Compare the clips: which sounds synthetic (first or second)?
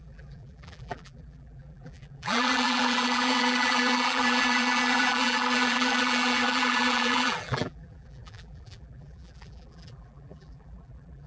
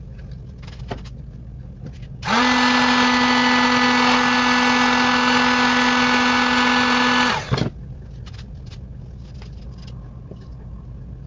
first